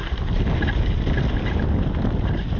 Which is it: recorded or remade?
recorded